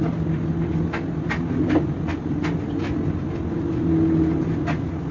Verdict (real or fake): real